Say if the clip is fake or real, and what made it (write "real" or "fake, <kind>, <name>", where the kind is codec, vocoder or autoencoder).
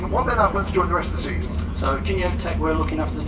fake, vocoder, Vocos